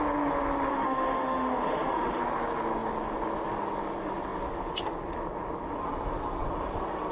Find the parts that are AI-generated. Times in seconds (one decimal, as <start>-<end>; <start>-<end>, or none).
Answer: 0.7-2.2